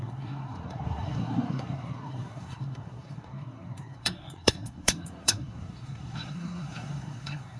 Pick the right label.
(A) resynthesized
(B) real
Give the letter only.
A